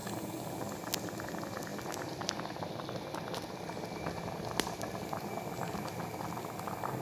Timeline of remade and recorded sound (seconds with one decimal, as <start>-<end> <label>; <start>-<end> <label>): 0.0-7.0 recorded